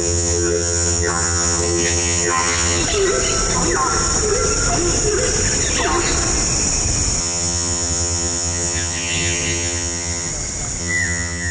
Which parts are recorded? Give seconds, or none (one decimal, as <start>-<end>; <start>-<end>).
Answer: 2.8-7.2; 10.3-10.8